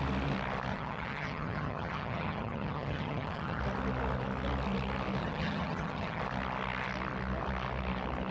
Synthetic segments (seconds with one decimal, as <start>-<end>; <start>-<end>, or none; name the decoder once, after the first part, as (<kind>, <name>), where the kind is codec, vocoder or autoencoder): 0.7-3.6 (vocoder, HiFi-GAN); 5.2-6.2